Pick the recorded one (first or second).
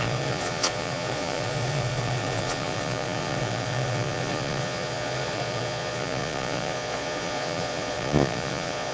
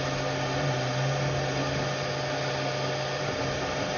second